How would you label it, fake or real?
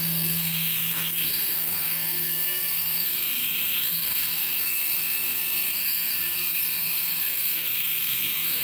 fake